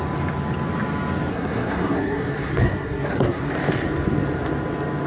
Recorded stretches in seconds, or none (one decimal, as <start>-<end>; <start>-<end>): 0.0-1.3; 3.5-5.1